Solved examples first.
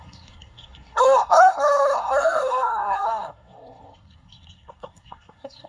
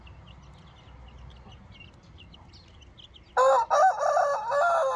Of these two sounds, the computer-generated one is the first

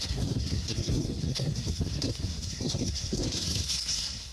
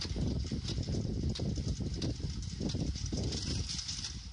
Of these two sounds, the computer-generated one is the first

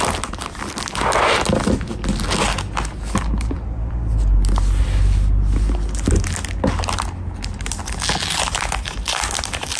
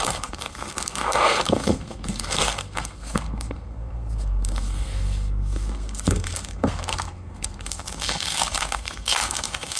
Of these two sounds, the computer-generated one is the second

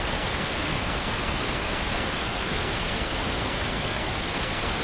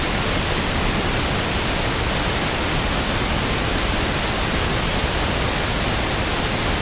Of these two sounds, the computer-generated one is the first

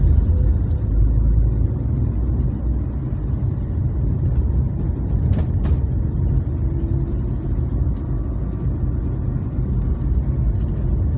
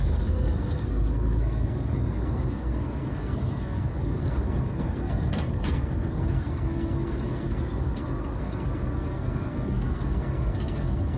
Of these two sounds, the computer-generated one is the second